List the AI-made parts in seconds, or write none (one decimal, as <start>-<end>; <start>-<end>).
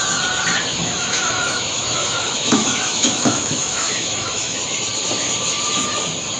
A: 0.7-4.5